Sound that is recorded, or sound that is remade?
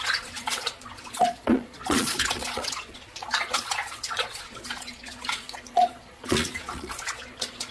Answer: remade